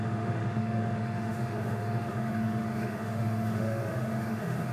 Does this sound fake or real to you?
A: fake